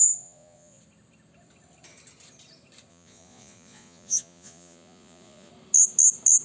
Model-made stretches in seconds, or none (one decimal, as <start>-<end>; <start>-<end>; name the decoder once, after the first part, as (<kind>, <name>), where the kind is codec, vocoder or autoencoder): 0.0-0.8 (vocoder, Vocos); 2.9-5.5

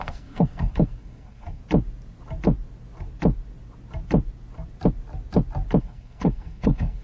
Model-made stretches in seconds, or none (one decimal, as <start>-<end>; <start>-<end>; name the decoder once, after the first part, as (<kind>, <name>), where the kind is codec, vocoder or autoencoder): 0.0-1.6 (codec, SNAC); 5.8-7.0

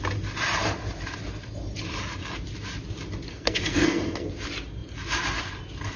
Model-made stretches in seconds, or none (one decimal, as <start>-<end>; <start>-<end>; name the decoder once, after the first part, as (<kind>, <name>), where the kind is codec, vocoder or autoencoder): 3.3-4.3 (codec, SNAC)

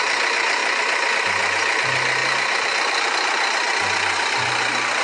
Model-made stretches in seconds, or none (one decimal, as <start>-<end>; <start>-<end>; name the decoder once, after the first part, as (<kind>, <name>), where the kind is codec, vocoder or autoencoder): 2.2-3.1 (vocoder, BigVGAN v2)

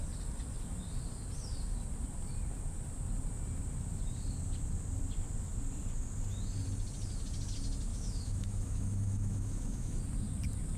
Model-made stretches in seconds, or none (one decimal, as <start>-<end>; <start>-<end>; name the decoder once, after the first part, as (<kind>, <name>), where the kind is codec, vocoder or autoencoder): 7.9-10.0 (autoencoder, DAC-VAE)